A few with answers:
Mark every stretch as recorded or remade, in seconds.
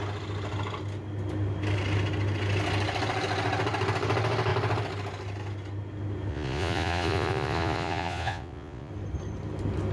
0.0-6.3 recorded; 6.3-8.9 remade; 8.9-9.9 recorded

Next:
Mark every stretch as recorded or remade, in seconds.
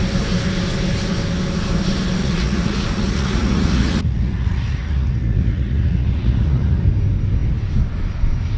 0.0-2.2 recorded; 2.2-6.8 remade; 6.8-8.6 recorded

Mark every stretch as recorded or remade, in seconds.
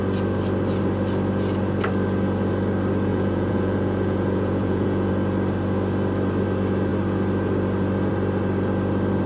0.0-3.1 recorded; 3.1-5.1 remade; 5.1-9.3 recorded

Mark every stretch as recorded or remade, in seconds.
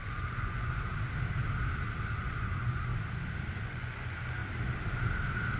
0.0-0.9 remade; 0.9-2.2 recorded; 2.2-2.9 remade; 2.9-3.5 recorded; 3.5-4.4 remade; 4.4-5.6 recorded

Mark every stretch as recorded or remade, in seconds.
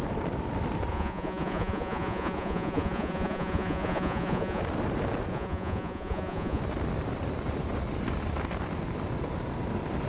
0.0-0.9 recorded; 0.9-4.6 remade; 4.6-5.3 recorded; 5.3-6.6 remade; 6.6-10.1 recorded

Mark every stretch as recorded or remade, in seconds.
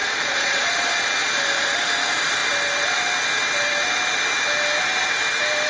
0.0-1.0 remade; 1.0-5.7 recorded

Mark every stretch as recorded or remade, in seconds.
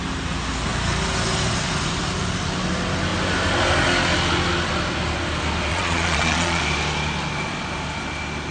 0.0-5.7 recorded; 5.7-6.6 remade; 6.6-8.5 recorded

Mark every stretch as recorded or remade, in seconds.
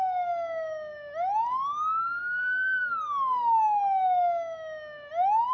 0.0-5.5 recorded